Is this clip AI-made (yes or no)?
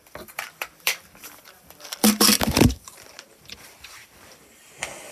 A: yes